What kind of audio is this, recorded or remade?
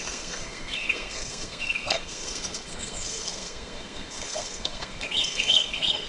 remade